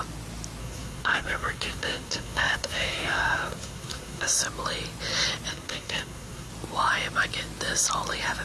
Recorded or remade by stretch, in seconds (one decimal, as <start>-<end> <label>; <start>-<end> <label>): 0.0-0.6 recorded; 0.6-4.3 remade; 4.3-5.5 recorded; 5.5-6.5 remade; 6.5-8.4 recorded